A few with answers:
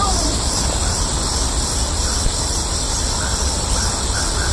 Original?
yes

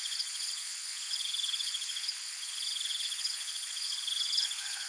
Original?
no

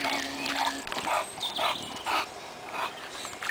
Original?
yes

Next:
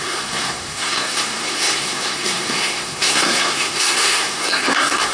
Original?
no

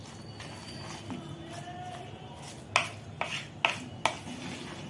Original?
yes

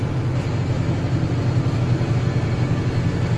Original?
yes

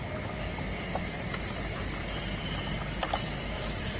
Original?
yes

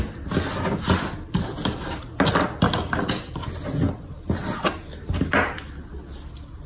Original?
yes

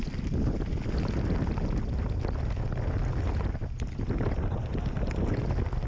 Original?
yes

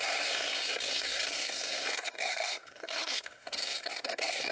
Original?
no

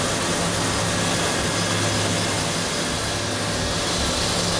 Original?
yes